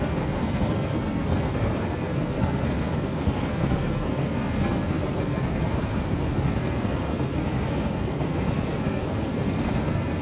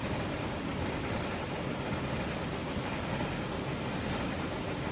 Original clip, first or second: second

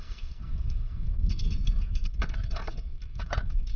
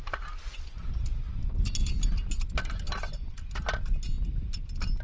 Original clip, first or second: second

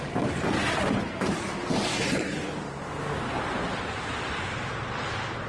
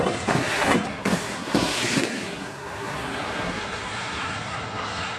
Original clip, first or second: first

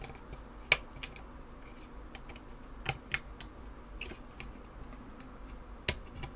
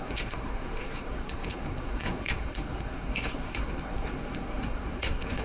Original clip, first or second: first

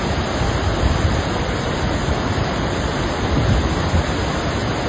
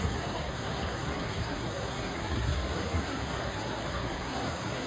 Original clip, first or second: first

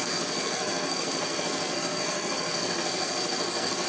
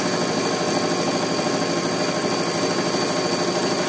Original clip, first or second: second